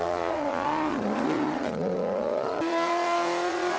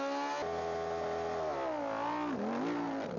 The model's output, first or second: first